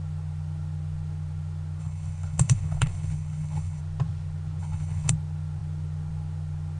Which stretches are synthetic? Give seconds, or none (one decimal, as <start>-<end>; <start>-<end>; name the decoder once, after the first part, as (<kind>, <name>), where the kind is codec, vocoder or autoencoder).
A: 1.8-3.8 (codec, HILCodec); 4.6-5.1